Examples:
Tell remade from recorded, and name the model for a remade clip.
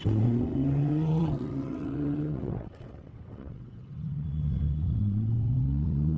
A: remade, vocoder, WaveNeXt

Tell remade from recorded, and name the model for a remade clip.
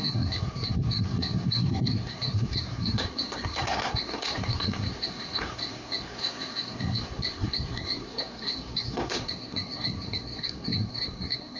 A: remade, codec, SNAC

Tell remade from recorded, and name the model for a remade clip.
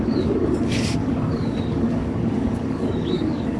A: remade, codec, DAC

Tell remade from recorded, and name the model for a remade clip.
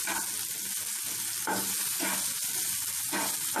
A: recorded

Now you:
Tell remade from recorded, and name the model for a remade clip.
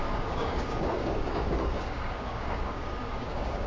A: remade, codec, DAC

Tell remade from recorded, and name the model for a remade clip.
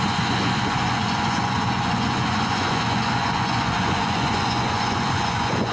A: remade, vocoder, Vocos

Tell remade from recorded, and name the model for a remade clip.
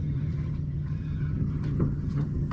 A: remade, vocoder, HiFi-GAN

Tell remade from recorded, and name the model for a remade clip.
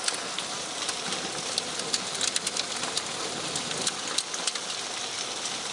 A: recorded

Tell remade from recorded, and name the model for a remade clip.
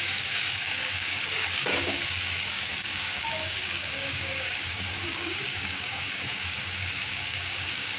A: remade, codec, DAC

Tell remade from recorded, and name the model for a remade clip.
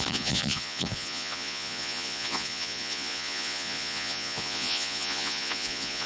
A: remade, vocoder, Vocos